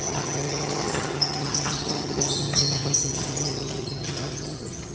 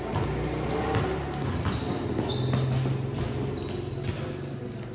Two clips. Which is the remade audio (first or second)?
first